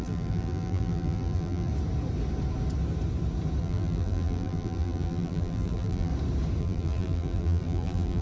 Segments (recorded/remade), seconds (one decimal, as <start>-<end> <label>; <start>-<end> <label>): 0.0-1.7 remade; 1.7-3.6 recorded; 3.6-6.1 remade; 6.1-6.6 recorded; 6.6-8.2 remade